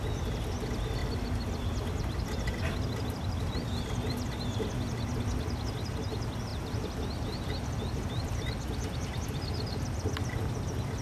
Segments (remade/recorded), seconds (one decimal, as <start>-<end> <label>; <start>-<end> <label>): 0.0-1.0 recorded; 1.0-4.7 remade; 4.7-6.5 recorded; 6.5-10.2 remade; 10.2-11.0 recorded